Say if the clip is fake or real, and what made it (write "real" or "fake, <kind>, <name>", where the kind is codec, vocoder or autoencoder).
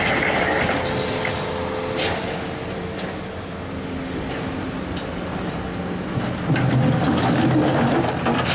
real